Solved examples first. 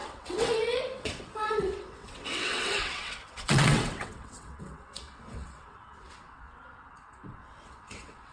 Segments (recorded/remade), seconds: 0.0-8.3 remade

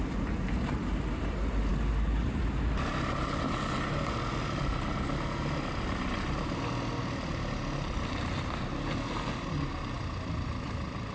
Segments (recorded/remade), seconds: 0.0-11.1 recorded

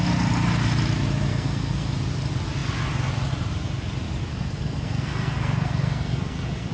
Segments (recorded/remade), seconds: 0.0-1.3 recorded; 1.3-1.9 remade; 1.9-4.3 recorded; 4.3-6.7 remade